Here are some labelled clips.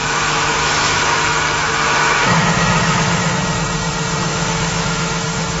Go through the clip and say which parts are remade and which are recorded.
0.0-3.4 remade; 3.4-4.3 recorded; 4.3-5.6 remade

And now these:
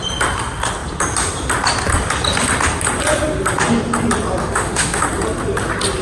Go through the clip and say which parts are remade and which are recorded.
0.0-4.4 recorded; 4.4-5.0 remade; 5.0-6.0 recorded

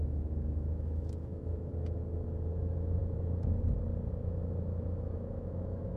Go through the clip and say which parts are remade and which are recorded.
0.0-1.7 remade; 1.7-2.5 recorded; 2.5-3.0 remade; 3.0-4.1 recorded; 4.1-6.0 remade

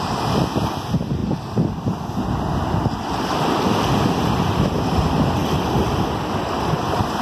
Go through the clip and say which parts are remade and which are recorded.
0.0-7.2 recorded

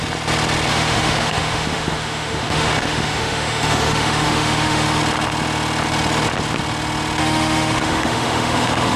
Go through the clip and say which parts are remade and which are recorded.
0.0-0.7 recorded; 0.7-5.0 remade; 5.0-7.2 recorded; 7.2-9.0 remade